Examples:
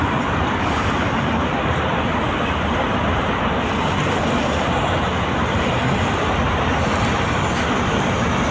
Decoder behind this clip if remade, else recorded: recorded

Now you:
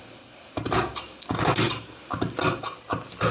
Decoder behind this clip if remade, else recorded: recorded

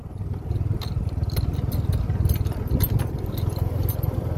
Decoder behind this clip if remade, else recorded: recorded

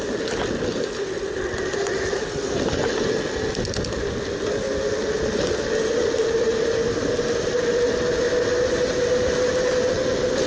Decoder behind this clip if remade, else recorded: recorded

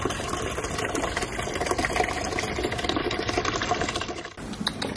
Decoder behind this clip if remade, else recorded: recorded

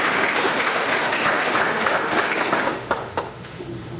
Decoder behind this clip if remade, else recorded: remade, autoencoder, DAC-VAE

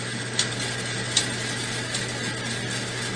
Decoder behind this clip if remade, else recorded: recorded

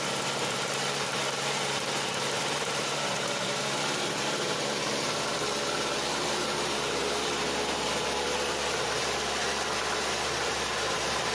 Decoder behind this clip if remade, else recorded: remade, vocoder, BigVGAN v2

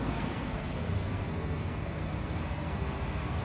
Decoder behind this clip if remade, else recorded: remade, codec, SNAC